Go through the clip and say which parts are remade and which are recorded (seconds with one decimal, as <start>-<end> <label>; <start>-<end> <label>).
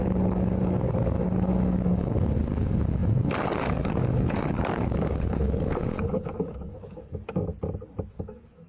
0.0-7.5 remade; 7.5-8.1 recorded; 8.1-8.7 remade